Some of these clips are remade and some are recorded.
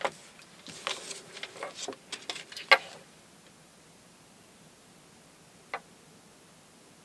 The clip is recorded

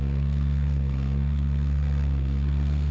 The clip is remade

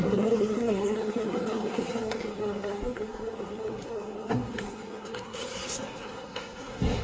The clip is remade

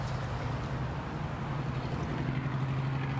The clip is recorded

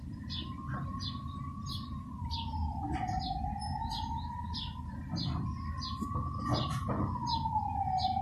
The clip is recorded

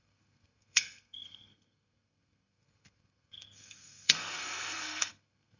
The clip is remade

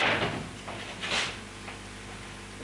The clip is recorded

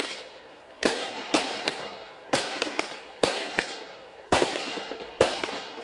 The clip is remade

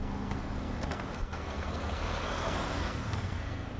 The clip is remade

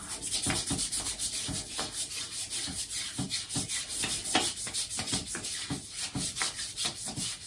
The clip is recorded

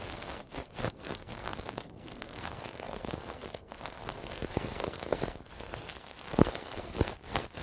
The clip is remade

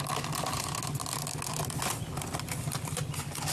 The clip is recorded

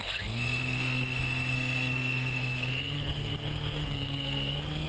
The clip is remade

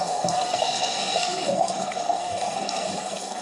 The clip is remade